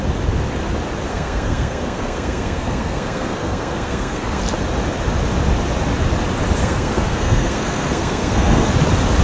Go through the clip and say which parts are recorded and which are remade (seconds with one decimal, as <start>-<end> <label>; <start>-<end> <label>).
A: 0.0-1.1 recorded; 1.1-4.4 remade; 4.4-6.6 recorded; 6.6-8.7 remade; 8.7-9.2 recorded